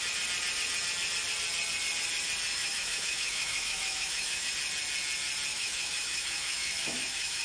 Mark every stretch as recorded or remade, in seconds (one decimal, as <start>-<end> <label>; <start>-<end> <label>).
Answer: 0.0-2.5 recorded; 2.5-4.5 remade; 4.5-5.5 recorded; 5.5-7.4 remade